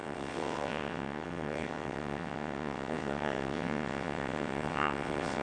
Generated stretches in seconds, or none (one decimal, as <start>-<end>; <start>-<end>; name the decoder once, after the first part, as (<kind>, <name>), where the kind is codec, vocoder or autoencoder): 0.0-5.4 (vocoder, WaveNeXt)